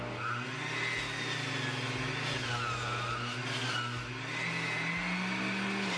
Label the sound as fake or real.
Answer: real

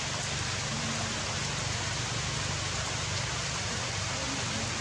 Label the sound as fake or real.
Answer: real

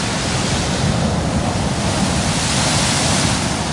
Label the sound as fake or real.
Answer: real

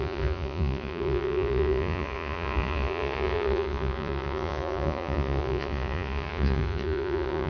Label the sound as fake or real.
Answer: fake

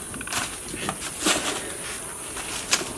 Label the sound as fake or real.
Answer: real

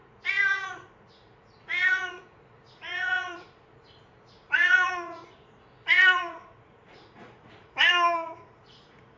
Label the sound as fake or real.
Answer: fake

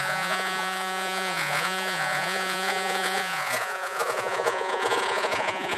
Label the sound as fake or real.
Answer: fake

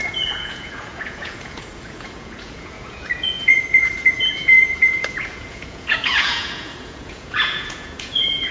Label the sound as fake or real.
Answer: fake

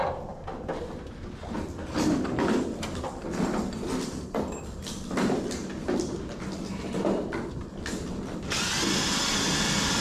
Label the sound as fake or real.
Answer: real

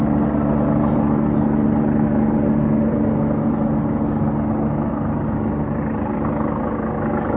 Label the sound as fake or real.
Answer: real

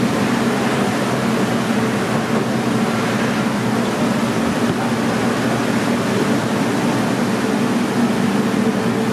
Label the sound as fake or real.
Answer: real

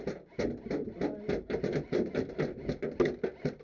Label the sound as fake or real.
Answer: real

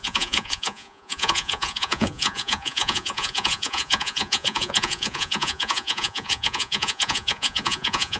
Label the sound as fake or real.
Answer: fake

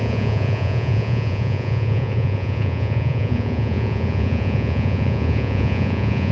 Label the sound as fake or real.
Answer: fake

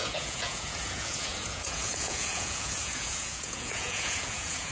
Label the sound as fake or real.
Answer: fake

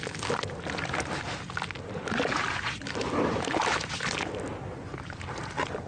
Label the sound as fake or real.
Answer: real